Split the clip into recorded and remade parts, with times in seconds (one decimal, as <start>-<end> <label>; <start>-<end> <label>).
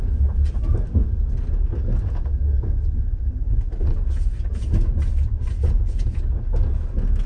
0.0-7.3 recorded